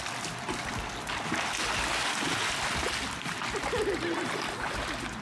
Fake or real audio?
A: real